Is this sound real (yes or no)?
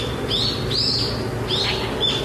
yes